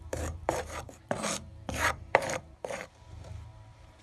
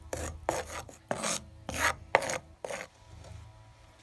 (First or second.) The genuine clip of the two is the second